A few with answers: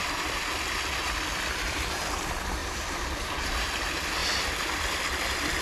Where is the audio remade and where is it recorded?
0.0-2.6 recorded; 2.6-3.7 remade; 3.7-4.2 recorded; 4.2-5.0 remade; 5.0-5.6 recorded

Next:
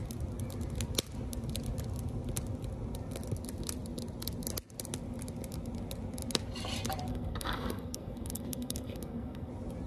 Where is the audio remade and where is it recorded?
0.0-7.1 recorded; 7.1-9.5 remade; 9.5-9.9 recorded

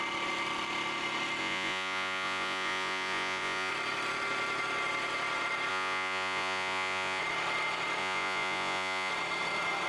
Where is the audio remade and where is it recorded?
0.0-1.4 recorded; 1.4-3.7 remade; 3.7-5.7 recorded; 5.7-7.2 remade; 7.2-8.0 recorded; 8.0-9.1 remade; 9.1-9.9 recorded

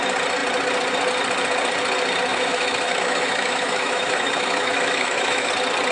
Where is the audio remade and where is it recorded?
0.0-2.3 recorded; 2.3-5.5 remade; 5.5-5.9 recorded

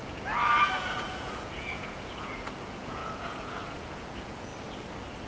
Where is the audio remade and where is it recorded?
0.0-4.5 remade; 4.5-5.3 recorded

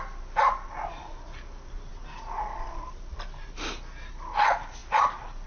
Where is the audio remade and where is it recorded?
0.0-5.5 recorded

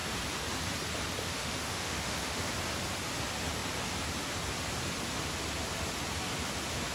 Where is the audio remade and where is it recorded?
0.0-1.2 recorded; 1.2-2.5 remade; 2.5-6.9 recorded